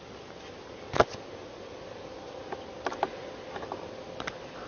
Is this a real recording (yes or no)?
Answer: yes